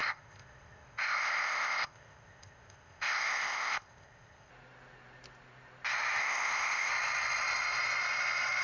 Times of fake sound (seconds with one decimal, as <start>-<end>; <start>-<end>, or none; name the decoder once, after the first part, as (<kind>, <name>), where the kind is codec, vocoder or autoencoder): 0.0-4.5 (codec, ZipCodec); 6.2-6.9